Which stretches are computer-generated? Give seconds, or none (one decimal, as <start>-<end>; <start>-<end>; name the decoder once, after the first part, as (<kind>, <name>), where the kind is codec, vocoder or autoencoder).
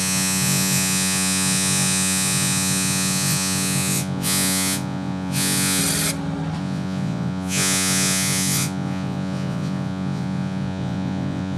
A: 0.0-5.8 (vocoder, Vocos); 6.6-11.6